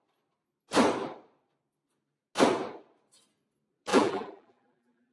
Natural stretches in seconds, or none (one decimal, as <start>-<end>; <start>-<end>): 0.0-3.9